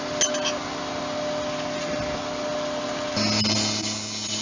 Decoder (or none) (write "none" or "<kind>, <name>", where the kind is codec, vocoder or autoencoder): none